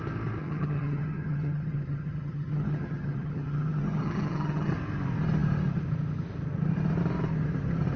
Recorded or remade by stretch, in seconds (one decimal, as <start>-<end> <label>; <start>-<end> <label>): 0.0-0.4 recorded; 0.4-4.7 remade; 4.7-8.0 recorded